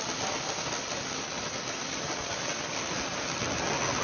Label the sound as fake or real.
real